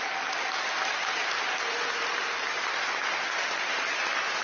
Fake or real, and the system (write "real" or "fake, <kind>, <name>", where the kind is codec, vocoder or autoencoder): real